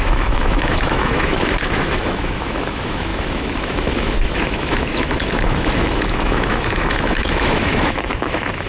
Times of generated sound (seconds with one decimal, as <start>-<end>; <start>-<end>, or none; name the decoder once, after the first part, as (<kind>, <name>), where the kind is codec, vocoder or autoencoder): 0.0-8.7 (autoencoder, DAC-VAE)